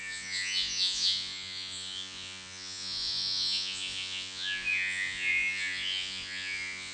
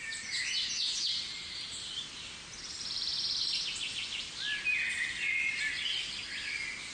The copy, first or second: first